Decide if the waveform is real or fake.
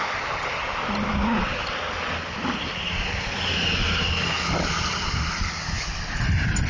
real